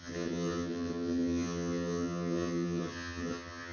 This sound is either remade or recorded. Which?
remade